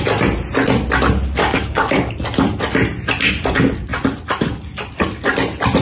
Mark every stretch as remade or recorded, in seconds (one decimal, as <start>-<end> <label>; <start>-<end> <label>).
0.0-1.4 recorded; 1.4-2.1 remade; 2.1-5.8 recorded